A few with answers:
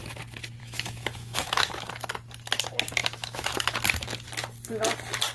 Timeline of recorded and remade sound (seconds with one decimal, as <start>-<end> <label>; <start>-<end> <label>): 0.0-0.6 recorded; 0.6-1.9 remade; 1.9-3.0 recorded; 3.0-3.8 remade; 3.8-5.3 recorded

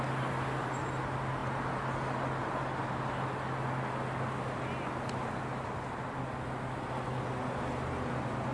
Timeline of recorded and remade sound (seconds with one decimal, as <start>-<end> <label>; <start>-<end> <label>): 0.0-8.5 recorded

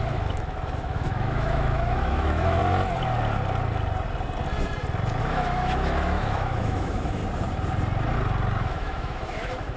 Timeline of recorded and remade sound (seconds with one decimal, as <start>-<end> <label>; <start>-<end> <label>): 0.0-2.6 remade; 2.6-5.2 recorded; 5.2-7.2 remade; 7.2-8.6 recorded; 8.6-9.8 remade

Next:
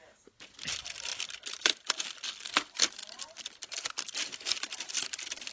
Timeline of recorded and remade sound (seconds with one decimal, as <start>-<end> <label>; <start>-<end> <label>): 0.0-5.5 recorded

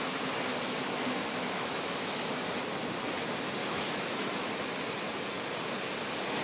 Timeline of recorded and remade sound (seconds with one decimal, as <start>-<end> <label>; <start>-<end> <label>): 0.0-1.3 recorded; 1.3-2.2 remade; 2.2-3.6 recorded; 3.6-4.5 remade; 4.5-6.4 recorded